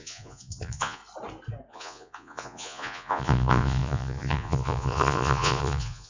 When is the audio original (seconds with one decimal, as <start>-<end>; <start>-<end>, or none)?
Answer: 1.0-1.7